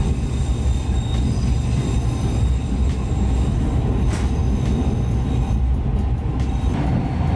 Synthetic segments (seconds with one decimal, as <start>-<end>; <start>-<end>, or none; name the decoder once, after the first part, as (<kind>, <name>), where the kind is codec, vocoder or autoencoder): none